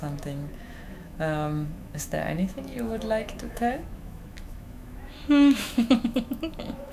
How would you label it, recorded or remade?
remade